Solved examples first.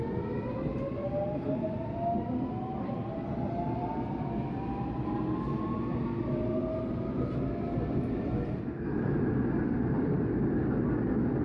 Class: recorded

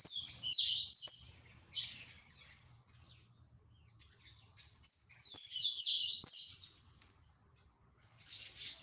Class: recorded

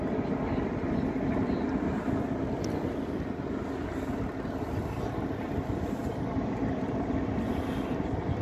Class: recorded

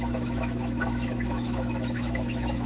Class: remade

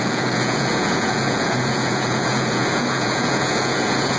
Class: remade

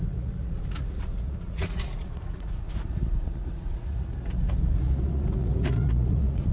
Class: remade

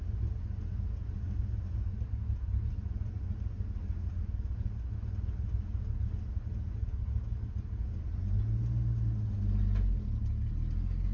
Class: recorded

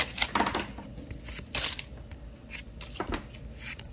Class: recorded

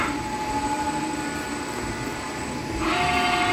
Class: recorded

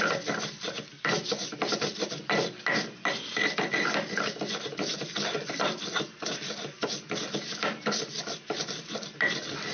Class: recorded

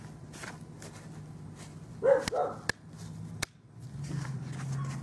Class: recorded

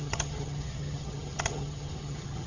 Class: remade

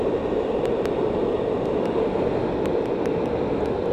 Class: recorded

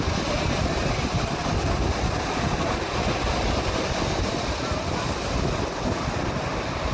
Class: recorded